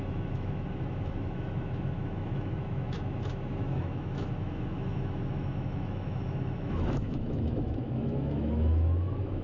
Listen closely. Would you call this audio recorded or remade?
remade